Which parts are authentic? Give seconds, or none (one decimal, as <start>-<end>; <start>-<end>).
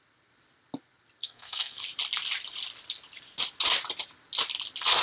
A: 0.0-1.2; 1.8-5.0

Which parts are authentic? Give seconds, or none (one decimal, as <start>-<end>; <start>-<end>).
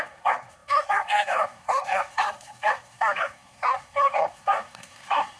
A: none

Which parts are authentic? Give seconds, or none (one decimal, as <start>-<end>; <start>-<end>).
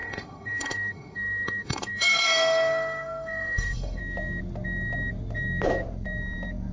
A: 4.0-6.7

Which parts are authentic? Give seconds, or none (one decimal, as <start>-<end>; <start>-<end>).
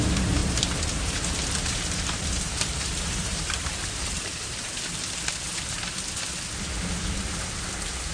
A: 0.0-0.4; 1.2-1.6; 4.8-8.1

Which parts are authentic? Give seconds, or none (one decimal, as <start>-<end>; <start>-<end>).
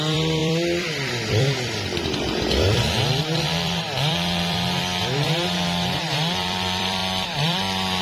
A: none